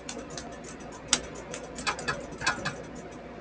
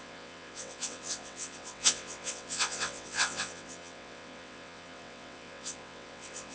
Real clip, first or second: first